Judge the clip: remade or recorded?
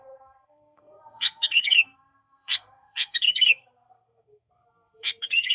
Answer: remade